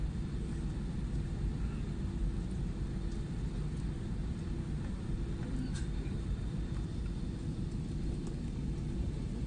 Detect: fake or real real